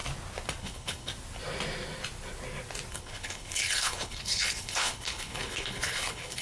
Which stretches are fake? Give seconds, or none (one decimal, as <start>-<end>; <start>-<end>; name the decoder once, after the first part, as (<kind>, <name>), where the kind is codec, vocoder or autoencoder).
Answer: 0.6-1.1 (codec, HILCodec); 2.9-6.4